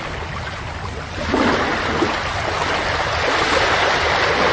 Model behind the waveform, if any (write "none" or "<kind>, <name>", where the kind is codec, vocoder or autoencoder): none